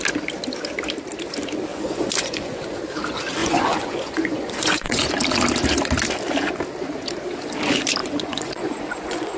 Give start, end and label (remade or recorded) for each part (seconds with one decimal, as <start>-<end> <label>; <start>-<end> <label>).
0.0-1.7 recorded; 1.7-2.8 remade; 2.8-3.4 recorded; 3.4-5.1 remade; 5.1-8.0 recorded; 8.0-9.4 remade